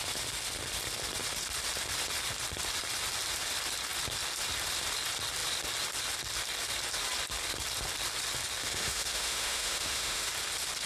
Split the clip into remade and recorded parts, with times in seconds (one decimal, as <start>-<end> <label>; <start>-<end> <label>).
0.0-8.6 recorded; 8.6-10.3 remade; 10.3-10.9 recorded